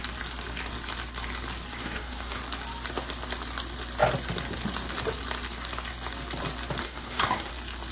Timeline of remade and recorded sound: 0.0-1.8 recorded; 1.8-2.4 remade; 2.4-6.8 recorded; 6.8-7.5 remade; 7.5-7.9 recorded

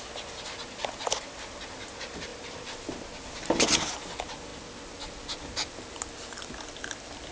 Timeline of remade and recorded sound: 0.0-7.3 recorded

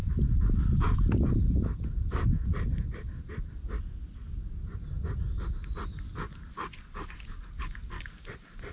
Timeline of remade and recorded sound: 0.0-8.7 recorded

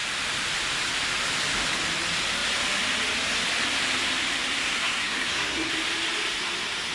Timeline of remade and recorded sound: 0.0-4.6 recorded; 4.6-5.7 remade; 5.7-6.9 recorded

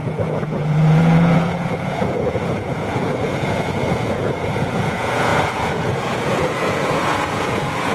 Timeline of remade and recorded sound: 0.0-7.9 remade

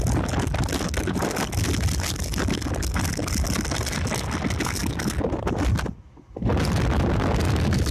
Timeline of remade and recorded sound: 0.0-7.9 recorded

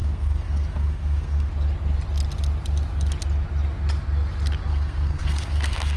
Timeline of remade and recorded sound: 0.0-1.5 remade; 1.5-4.7 recorded; 4.7-6.0 remade

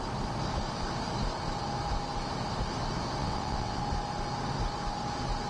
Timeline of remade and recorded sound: 0.0-3.2 recorded; 3.2-3.8 remade; 3.8-5.5 recorded